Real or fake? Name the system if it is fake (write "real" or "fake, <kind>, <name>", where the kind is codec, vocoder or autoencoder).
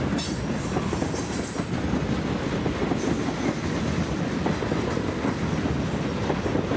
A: real